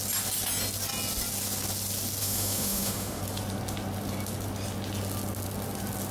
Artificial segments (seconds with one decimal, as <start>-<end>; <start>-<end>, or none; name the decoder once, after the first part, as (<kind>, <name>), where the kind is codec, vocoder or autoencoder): 2.2-3.2 (autoencoder, DAC-VAE)